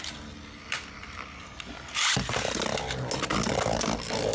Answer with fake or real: real